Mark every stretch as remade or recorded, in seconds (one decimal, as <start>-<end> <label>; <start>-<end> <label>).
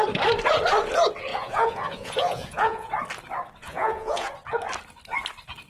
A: 0.0-1.3 recorded; 1.3-2.9 remade; 2.9-3.6 recorded; 3.6-4.3 remade; 4.3-5.7 recorded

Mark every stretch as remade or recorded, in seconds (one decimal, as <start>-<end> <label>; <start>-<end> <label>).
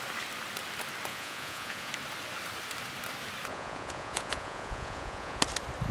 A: 0.0-1.1 recorded; 1.1-1.9 remade; 1.9-3.5 recorded; 3.5-5.4 remade; 5.4-5.9 recorded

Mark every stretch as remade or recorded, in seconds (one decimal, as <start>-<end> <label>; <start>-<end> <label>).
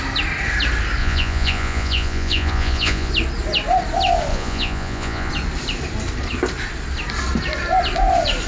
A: 0.0-1.0 recorded; 1.0-3.1 remade; 3.1-4.3 recorded; 4.3-5.3 remade; 5.3-8.5 recorded